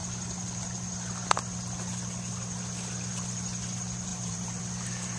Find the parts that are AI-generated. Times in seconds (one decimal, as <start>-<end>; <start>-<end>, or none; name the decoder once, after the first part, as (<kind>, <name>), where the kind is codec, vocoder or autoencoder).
4.1-4.6 (vocoder, BigVGAN v2)